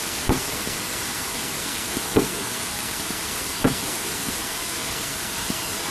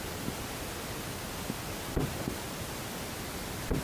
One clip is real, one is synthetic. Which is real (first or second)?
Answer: second